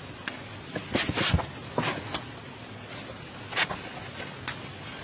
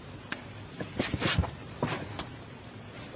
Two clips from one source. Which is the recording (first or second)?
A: first